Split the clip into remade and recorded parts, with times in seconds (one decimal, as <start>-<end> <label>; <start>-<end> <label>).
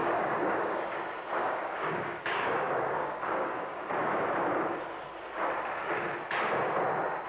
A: 0.0-0.9 remade; 0.9-1.4 recorded; 1.4-3.9 remade; 3.9-7.3 recorded